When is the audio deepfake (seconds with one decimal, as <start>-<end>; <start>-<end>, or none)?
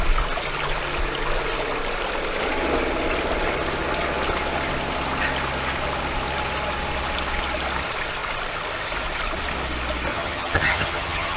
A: 10.1-11.4